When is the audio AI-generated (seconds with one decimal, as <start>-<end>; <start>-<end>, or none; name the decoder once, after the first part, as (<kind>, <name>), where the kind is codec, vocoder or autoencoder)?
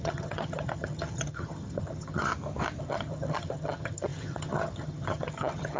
0.0-2.3 (vocoder, HiFi-GAN); 2.8-5.8